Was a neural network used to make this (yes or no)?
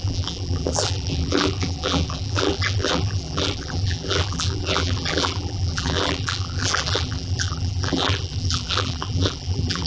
yes